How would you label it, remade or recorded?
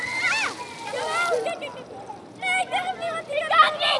recorded